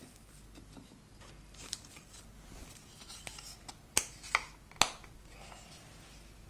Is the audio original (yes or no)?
yes